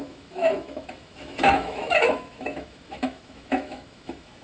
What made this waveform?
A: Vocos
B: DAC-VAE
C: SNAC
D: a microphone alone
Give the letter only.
B